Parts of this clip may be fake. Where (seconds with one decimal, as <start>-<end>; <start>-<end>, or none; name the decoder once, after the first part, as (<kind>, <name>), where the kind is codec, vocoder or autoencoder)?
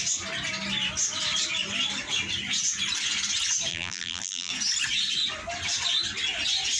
3.7-4.5 (vocoder, BigVGAN v2)